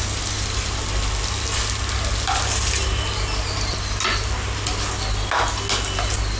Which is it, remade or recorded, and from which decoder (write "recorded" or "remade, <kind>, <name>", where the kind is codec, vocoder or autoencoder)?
recorded